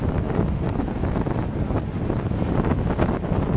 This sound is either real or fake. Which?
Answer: real